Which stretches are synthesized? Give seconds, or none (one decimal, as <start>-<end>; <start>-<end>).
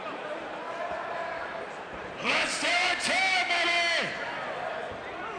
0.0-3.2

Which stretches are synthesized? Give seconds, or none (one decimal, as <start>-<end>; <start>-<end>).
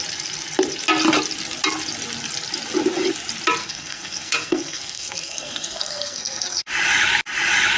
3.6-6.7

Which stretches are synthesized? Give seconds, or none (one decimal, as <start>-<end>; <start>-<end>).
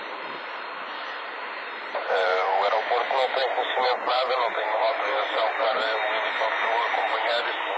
0.0-7.8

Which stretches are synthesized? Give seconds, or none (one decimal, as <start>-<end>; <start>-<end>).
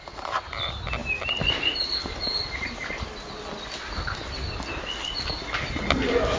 none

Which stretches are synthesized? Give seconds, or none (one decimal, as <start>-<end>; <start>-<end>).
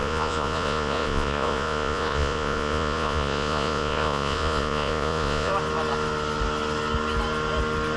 0.0-5.5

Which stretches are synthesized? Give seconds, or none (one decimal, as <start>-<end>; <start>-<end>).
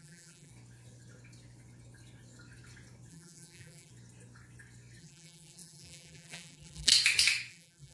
0.0-0.5; 3.1-3.9; 5.0-6.9; 7.5-7.9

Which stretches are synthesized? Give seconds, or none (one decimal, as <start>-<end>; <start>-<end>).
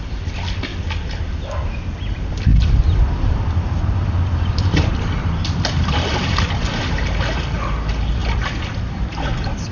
2.5-6.3; 8.2-8.7